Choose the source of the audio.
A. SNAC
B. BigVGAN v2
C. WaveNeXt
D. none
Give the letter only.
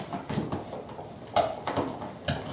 D